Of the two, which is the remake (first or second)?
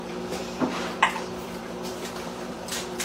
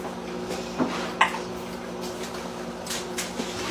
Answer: first